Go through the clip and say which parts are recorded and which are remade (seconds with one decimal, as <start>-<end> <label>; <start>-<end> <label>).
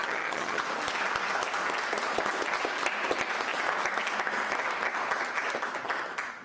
0.0-0.6 remade; 0.6-6.4 recorded